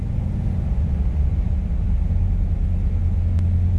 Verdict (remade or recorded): recorded